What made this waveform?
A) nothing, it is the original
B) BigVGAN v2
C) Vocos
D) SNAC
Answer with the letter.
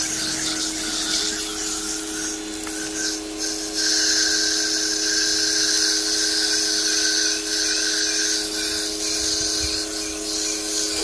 A